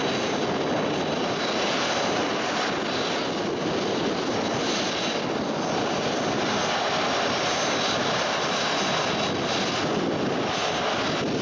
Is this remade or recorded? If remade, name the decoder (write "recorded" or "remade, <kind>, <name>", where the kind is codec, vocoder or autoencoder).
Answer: recorded